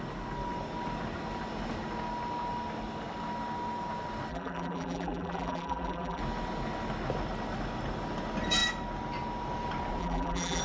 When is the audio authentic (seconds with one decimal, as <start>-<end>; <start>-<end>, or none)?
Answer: 0.0-4.3; 6.2-10.0